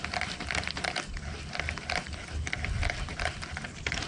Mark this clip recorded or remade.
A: recorded